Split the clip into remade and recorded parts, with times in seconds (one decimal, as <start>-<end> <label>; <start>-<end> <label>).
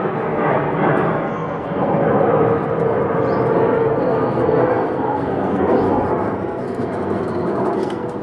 0.0-2.0 remade; 2.0-3.8 recorded; 3.8-8.2 remade